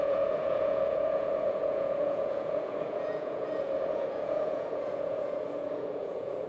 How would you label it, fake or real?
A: fake